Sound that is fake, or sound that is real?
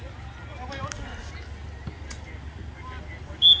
real